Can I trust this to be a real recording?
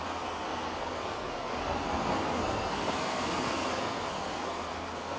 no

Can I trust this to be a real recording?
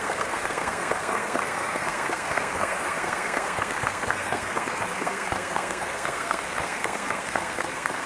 no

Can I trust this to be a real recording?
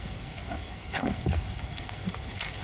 no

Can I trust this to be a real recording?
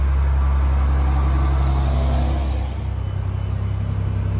yes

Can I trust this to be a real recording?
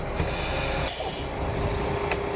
yes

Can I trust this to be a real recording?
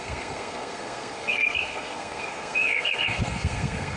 no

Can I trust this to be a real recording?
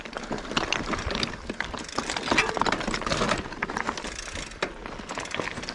yes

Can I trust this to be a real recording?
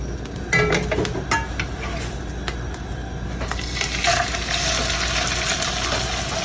yes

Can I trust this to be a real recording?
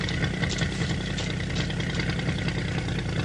yes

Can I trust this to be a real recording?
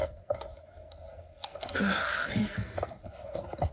no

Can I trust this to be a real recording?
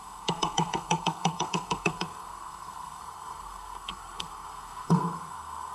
no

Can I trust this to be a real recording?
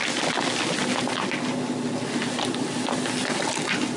yes